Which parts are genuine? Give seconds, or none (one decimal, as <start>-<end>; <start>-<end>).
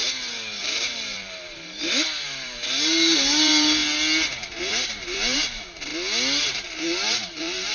0.0-0.6; 3.8-4.6; 5.9-6.4